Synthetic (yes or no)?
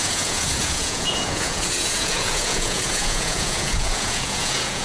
yes